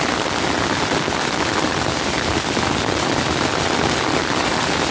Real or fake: real